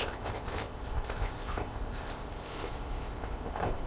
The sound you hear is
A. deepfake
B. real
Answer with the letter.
A